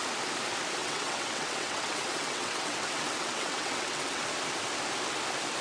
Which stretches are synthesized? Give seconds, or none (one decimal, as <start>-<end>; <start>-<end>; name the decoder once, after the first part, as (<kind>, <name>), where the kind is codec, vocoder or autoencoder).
0.8-4.2 (vocoder, WaveNeXt)